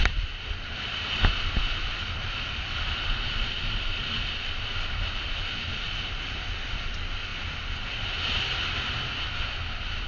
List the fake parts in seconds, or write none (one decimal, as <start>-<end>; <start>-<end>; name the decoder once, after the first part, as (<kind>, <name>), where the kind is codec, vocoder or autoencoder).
none